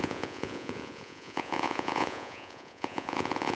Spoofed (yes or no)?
yes